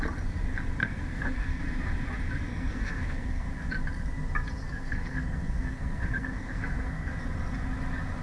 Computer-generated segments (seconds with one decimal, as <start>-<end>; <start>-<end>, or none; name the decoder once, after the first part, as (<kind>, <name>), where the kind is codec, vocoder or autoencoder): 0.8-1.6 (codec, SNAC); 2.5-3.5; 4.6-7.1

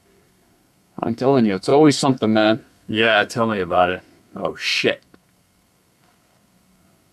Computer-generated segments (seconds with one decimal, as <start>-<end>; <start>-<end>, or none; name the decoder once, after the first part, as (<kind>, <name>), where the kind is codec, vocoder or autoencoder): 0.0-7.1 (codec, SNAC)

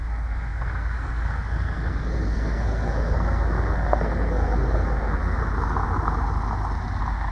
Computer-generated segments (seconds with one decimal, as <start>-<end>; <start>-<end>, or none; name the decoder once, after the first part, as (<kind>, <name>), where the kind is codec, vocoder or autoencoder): 0.0-5.4 (codec, SNAC)

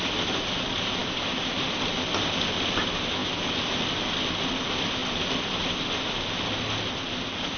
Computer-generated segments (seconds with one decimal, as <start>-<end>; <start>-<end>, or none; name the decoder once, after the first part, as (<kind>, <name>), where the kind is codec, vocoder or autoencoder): none